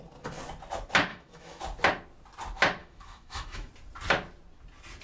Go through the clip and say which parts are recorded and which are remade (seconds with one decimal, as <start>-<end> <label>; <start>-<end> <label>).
0.0-1.1 recorded; 1.1-1.6 remade; 1.6-2.8 recorded; 2.8-3.7 remade; 3.7-5.0 recorded